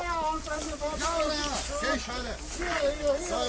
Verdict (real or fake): real